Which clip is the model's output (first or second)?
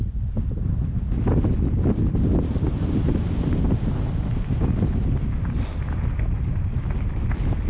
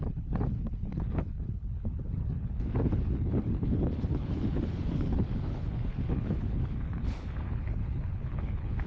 second